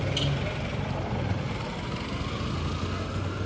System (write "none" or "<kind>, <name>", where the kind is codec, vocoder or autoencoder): none